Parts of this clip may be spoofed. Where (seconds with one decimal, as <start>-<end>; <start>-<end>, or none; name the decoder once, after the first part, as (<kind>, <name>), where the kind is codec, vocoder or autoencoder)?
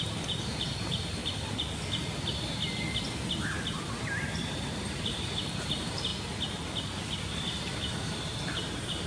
0.0-1.2 (vocoder, BigVGAN v2); 3.9-6.1; 7.2-9.1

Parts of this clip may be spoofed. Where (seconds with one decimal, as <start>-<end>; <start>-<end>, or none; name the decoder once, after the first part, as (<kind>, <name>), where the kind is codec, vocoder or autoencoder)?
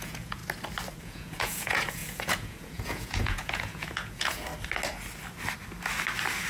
0.0-0.4 (vocoder, Vocos); 1.0-4.5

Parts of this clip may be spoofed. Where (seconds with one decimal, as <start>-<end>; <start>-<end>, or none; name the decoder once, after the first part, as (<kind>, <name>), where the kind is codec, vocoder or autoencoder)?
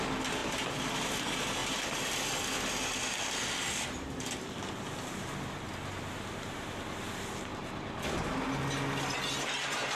none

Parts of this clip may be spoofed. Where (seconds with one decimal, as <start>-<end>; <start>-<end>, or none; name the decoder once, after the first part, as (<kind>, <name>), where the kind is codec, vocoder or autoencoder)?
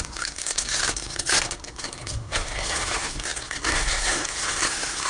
0.0-5.1 (codec, SNAC)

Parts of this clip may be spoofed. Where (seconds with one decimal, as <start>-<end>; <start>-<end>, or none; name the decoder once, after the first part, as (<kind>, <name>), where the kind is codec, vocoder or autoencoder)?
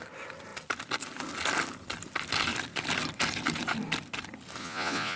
4.6-5.2 (vocoder, Vocos)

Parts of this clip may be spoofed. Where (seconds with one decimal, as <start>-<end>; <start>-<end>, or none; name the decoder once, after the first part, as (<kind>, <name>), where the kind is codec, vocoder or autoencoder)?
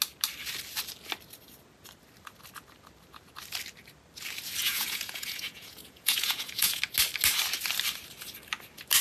4.6-6.8 (vocoder, Vocos)